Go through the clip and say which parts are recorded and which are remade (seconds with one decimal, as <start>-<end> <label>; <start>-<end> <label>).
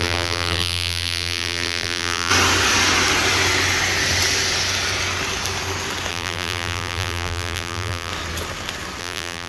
0.0-2.3 remade; 2.3-6.1 recorded; 6.1-8.1 remade; 8.1-9.0 recorded; 9.0-9.5 remade